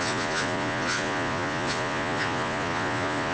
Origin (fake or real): fake